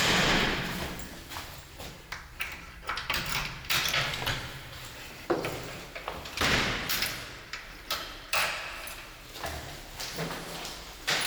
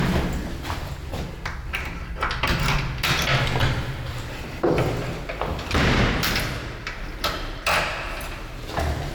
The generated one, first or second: first